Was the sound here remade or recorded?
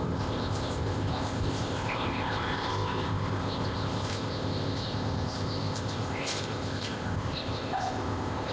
remade